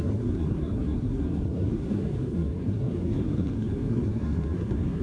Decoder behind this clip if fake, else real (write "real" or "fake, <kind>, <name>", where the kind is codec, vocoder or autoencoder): fake, codec, SNAC